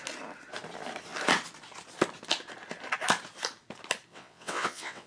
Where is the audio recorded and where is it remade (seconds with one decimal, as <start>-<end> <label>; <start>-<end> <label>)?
0.0-4.1 recorded; 4.1-5.1 remade